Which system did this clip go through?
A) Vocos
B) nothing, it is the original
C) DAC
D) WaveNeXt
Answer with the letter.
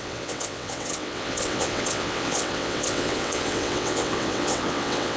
D